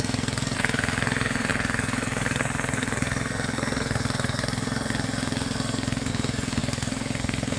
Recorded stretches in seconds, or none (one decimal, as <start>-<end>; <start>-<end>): none